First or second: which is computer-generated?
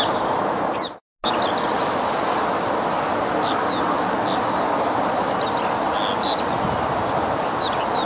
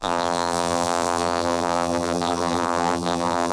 second